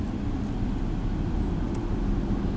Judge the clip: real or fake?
real